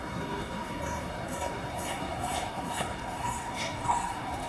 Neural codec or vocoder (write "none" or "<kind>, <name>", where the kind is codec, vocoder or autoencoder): codec, SNAC